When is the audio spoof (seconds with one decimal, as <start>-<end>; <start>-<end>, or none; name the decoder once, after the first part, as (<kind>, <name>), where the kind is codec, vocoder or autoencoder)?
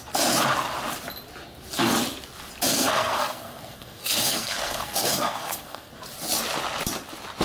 2.7-5.9 (codec, SNAC)